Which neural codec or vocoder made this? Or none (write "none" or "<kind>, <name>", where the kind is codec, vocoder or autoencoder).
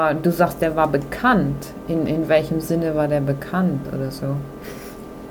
none